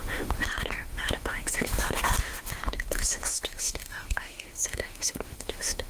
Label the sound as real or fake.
fake